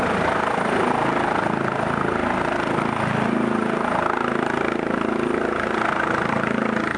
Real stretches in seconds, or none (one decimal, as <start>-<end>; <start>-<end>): 0.0-7.0